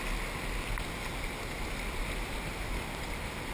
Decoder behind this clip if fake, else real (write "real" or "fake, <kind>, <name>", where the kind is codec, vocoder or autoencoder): real